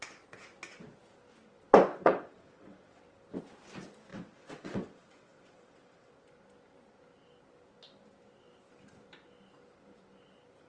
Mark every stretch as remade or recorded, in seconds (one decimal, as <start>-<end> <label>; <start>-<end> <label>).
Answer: 0.0-1.9 recorded; 1.9-3.0 remade; 3.0-4.1 recorded; 4.1-6.1 remade; 6.1-10.7 recorded